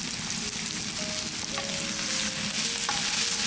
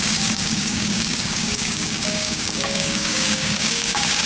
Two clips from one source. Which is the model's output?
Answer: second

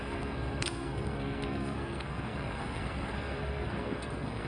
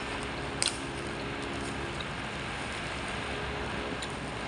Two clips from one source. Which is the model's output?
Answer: first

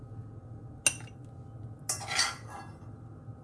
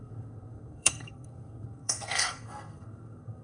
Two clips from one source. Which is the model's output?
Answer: second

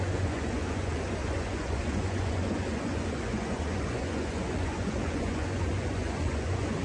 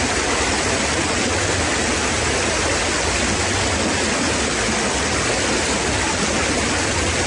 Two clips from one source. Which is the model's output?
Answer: first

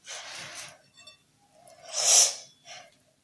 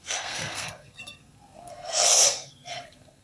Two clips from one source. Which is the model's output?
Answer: second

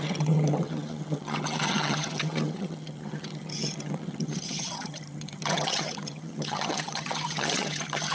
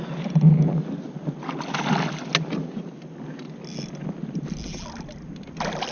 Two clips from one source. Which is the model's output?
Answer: first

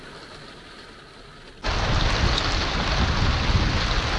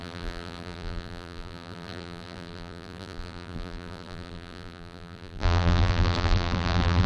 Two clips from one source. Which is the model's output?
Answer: second